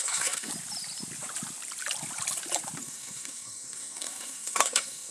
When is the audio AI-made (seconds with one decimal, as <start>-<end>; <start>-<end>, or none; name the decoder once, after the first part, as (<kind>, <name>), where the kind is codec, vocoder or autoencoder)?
0.0-0.5 (codec, SNAC); 2.8-5.1